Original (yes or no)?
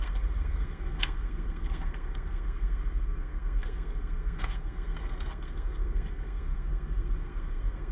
no